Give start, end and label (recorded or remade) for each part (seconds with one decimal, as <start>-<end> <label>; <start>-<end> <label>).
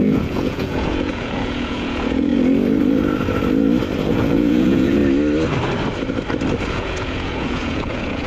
0.0-2.3 remade; 2.3-4.1 recorded; 4.1-5.0 remade; 5.0-6.7 recorded; 6.7-8.3 remade